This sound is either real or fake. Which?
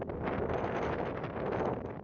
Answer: real